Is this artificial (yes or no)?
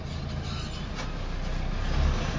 no